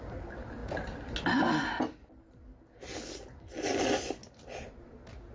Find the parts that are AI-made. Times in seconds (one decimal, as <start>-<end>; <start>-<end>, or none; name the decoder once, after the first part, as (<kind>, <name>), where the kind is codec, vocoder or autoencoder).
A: none